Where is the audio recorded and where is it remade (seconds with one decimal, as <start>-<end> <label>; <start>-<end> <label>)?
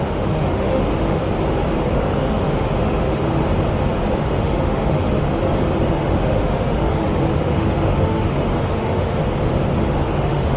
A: 0.0-1.2 remade; 1.2-1.9 recorded; 1.9-3.4 remade; 3.4-4.2 recorded; 4.2-5.4 remade; 5.4-5.9 recorded; 5.9-9.2 remade; 9.2-9.8 recorded; 9.8-10.6 remade